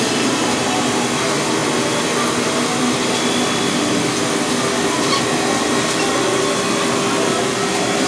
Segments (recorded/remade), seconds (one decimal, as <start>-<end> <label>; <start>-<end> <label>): 0.0-8.1 recorded